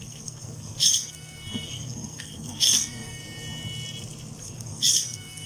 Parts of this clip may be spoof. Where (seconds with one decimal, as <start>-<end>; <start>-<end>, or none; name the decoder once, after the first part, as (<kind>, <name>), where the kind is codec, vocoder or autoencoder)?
0.0-3.2 (codec, SNAC); 4.4-5.5